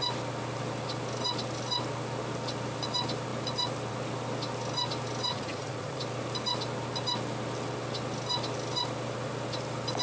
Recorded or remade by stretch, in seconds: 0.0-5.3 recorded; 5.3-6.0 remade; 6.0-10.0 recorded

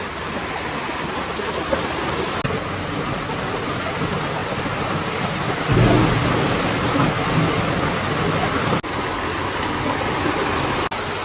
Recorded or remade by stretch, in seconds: 0.0-11.2 recorded